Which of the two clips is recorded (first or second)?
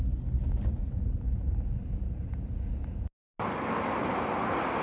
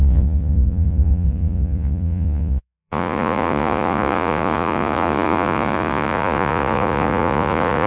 first